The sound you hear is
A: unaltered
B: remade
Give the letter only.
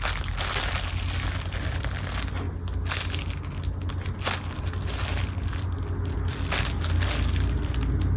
A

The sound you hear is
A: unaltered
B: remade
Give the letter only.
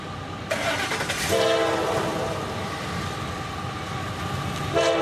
A